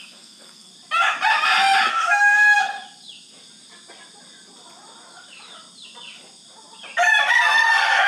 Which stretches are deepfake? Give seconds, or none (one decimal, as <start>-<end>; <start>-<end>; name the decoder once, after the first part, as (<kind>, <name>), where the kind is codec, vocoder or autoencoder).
0.0-0.7 (codec, SNAC); 1.9-2.7; 7.3-8.1